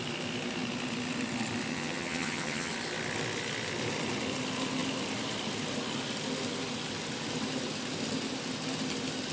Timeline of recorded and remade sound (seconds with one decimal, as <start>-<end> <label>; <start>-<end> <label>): 0.0-1.7 recorded; 1.7-2.7 remade; 2.7-9.3 recorded